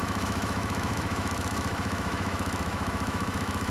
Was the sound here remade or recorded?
remade